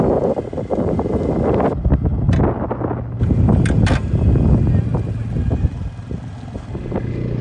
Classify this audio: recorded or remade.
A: recorded